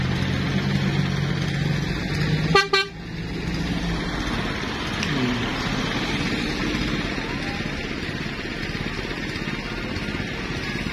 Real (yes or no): yes